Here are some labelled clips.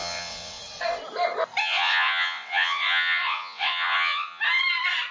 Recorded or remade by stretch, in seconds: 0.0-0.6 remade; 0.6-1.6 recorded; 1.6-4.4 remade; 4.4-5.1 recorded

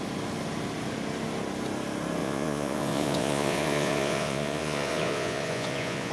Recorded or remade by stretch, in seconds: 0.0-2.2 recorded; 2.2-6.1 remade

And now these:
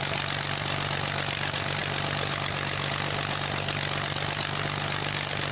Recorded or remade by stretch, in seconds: 0.0-5.5 recorded

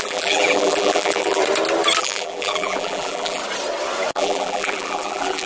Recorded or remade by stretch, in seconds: 0.0-1.4 remade; 1.4-2.0 recorded; 2.0-3.4 remade; 3.4-4.1 recorded; 4.1-5.5 remade

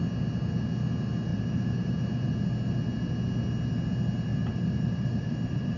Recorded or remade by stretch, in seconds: 0.0-1.3 recorded; 1.3-1.9 remade; 1.9-4.3 recorded; 4.3-5.8 remade

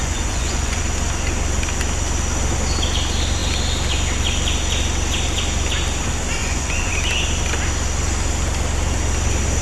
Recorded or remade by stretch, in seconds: 0.0-0.8 remade; 0.8-6.4 recorded; 6.4-6.9 remade; 6.9-9.6 recorded

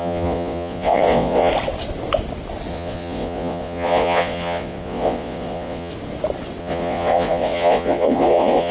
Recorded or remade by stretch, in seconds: 0.0-1.5 remade; 1.5-2.7 recorded; 2.7-5.9 remade; 5.9-6.6 recorded; 6.6-8.7 remade